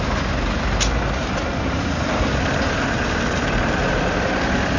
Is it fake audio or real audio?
real